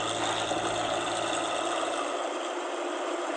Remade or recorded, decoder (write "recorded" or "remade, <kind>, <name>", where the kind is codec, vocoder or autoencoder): recorded